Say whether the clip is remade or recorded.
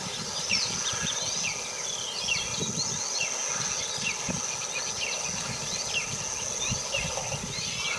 recorded